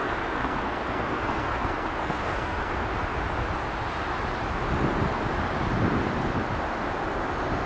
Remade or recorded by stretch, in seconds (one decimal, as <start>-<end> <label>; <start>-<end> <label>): 0.0-2.9 remade; 2.9-7.7 recorded